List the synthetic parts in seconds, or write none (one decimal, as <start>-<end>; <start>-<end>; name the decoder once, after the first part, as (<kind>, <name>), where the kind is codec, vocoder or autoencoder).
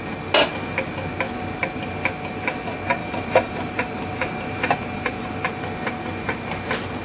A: 3.0-5.3 (vocoder, BigVGAN v2)